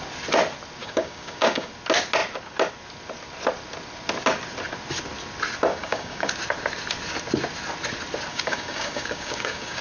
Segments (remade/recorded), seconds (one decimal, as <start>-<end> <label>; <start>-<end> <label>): 0.0-0.8 recorded; 0.8-1.7 remade; 1.7-5.7 recorded; 5.7-6.3 remade; 6.3-8.3 recorded; 8.3-9.8 remade